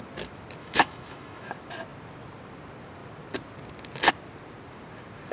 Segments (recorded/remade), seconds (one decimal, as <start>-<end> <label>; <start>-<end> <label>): 0.0-0.6 recorded; 0.6-1.5 remade; 1.5-5.3 recorded